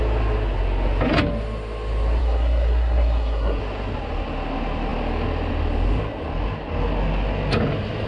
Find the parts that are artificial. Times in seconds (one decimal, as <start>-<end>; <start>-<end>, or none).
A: 2.2-3.6